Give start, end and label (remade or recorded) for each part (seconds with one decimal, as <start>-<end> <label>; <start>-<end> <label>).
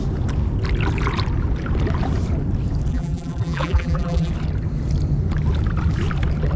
0.0-2.9 recorded; 2.9-4.3 remade; 4.3-6.6 recorded